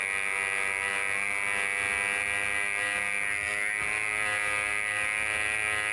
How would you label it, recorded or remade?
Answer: recorded